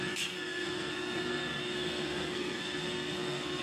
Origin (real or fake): fake